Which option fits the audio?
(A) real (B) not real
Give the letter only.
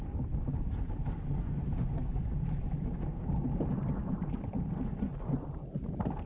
A